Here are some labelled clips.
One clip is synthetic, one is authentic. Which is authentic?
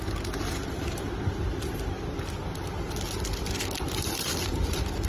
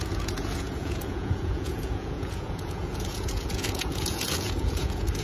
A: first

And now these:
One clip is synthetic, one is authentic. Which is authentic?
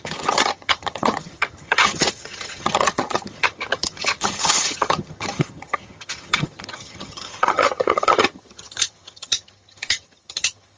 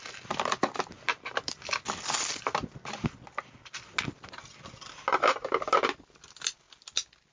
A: second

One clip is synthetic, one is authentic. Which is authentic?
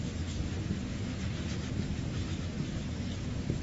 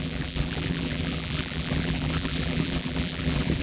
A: first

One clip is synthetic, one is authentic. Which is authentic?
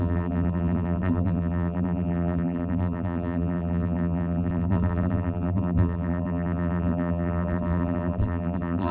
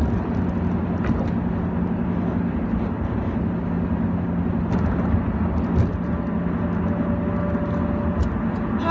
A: second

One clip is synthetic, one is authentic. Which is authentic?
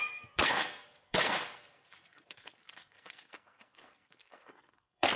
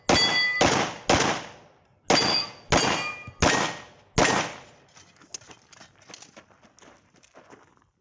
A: second